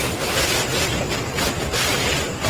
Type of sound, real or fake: real